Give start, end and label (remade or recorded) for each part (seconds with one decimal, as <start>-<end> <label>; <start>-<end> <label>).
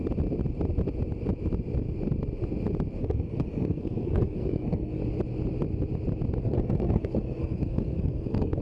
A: 0.0-3.0 recorded; 3.0-5.0 remade; 5.0-6.4 recorded; 6.4-8.6 remade